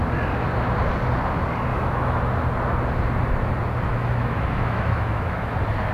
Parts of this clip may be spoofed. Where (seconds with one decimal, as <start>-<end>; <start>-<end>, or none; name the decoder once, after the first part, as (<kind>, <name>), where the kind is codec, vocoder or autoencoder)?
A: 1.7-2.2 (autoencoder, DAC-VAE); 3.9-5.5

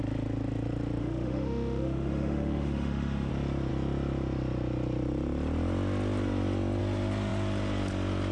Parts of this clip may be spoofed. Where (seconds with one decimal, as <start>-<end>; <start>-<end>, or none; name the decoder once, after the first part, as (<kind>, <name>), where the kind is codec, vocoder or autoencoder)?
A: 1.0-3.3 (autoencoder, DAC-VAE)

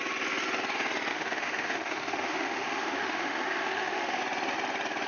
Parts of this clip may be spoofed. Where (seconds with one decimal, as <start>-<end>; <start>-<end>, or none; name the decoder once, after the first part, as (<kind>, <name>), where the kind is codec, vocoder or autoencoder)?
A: 1.1-4.2 (autoencoder, DAC-VAE)

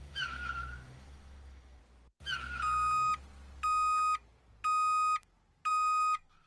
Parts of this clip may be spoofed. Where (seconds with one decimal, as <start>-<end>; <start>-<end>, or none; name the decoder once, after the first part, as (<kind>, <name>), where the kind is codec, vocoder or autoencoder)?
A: 0.0-1.8 (autoencoder, DAC-VAE); 5.7-6.5

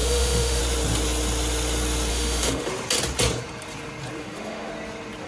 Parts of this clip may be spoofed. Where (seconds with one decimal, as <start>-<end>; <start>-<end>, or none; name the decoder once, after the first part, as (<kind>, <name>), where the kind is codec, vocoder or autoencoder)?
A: 0.0-0.6 (autoencoder, DAC-VAE); 2.1-2.7; 4.2-4.7

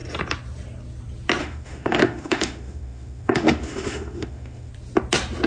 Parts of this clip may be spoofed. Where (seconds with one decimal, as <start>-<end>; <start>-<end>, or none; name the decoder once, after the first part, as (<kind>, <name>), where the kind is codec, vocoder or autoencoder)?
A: 1.4-4.7 (autoencoder, DAC-VAE)